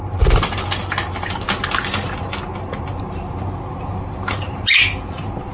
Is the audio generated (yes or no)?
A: no